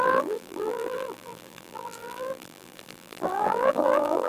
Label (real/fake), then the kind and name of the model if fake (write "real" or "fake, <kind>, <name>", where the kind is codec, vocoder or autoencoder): fake, vocoder, BigVGAN v2